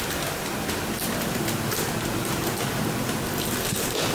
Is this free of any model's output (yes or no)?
yes